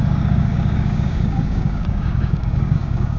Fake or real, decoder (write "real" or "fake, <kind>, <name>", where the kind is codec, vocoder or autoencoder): fake, codec, DAC